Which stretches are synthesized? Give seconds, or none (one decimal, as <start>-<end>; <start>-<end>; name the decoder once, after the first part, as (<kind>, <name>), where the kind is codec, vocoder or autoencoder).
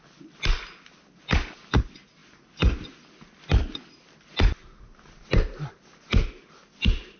none